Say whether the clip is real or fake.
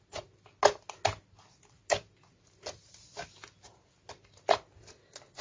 real